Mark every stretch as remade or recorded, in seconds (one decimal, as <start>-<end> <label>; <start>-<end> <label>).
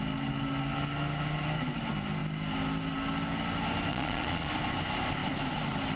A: 0.0-3.9 recorded; 3.9-4.5 remade; 4.5-6.0 recorded